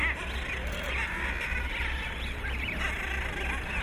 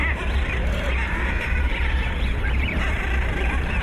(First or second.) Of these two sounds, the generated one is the second